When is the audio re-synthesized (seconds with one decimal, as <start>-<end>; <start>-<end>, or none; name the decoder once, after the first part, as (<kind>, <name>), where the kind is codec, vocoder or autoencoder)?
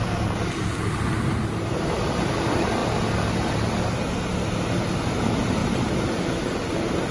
none